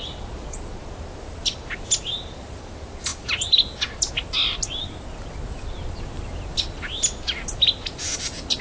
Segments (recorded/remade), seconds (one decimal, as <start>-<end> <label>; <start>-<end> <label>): 0.0-8.6 recorded